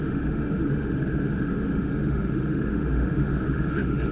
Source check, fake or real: fake